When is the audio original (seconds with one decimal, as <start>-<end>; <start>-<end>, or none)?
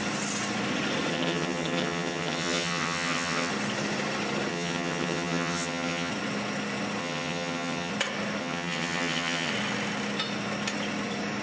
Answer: 0.0-1.1; 3.5-4.5; 6.1-7.0; 7.9-8.4; 9.5-11.4